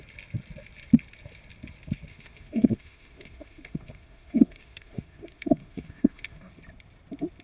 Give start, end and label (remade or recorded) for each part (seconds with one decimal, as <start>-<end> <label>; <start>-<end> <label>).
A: 0.0-2.1 recorded; 2.1-6.5 remade; 6.5-7.4 recorded